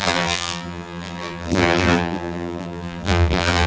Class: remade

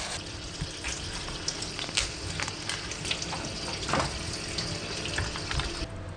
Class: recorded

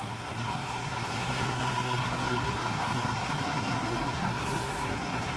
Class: remade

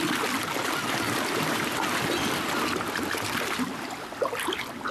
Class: recorded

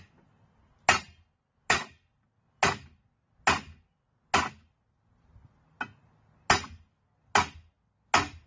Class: recorded